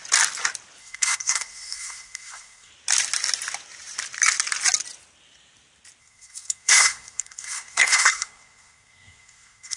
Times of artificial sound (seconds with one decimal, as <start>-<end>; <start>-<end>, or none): 0.8-2.7; 6.0-9.8